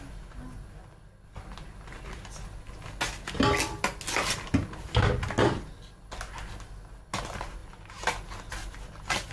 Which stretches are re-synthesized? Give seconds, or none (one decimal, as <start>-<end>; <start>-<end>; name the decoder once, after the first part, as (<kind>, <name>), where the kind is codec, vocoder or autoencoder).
none